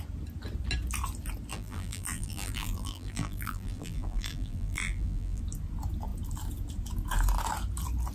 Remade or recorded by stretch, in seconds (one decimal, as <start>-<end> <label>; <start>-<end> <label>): 0.0-1.5 recorded; 1.5-5.4 remade; 5.4-8.1 recorded